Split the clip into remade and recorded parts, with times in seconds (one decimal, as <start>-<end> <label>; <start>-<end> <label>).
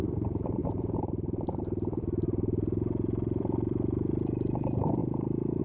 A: 0.0-5.0 remade; 5.0-5.6 recorded